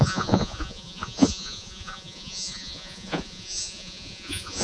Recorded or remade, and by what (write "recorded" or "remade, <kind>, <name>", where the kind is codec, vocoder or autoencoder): remade, vocoder, Vocos